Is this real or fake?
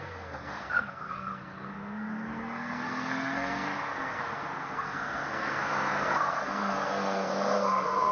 fake